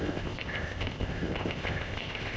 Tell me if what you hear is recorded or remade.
remade